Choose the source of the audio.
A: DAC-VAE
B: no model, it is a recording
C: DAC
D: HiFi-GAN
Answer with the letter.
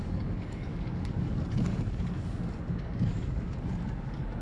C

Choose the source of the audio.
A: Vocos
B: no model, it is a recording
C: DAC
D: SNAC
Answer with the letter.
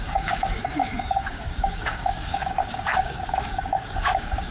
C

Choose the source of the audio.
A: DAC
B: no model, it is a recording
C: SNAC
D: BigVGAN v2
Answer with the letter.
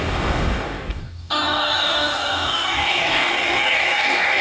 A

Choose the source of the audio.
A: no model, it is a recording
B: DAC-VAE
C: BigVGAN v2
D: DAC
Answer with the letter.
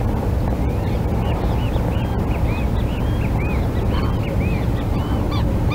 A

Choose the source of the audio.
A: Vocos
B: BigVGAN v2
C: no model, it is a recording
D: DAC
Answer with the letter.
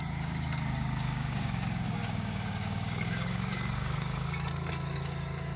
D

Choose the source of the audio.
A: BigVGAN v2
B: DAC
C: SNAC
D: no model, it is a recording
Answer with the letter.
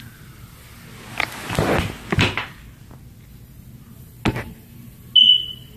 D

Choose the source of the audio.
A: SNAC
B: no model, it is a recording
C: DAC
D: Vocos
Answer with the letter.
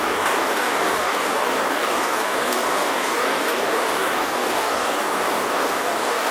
C